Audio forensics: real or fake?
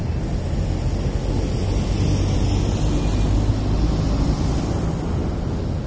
real